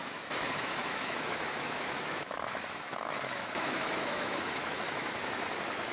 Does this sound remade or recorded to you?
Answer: remade